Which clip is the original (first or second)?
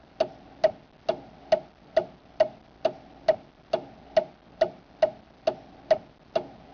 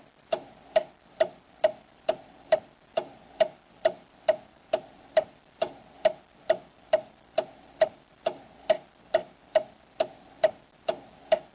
first